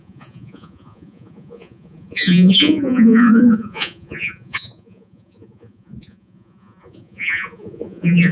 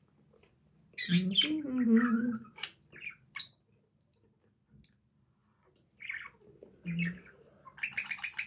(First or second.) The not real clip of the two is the first